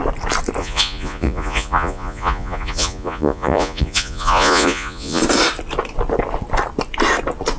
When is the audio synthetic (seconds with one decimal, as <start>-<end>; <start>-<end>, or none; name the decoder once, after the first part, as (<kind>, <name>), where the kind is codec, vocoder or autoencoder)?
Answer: 0.6-5.2 (vocoder, Vocos)